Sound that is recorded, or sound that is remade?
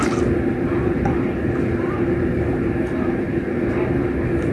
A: recorded